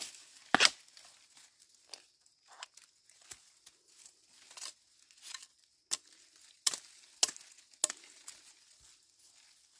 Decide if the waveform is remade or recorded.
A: recorded